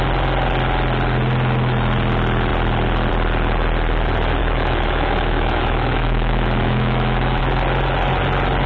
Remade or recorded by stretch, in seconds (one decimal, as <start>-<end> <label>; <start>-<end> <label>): 0.0-4.4 recorded; 4.4-7.4 remade; 7.4-8.7 recorded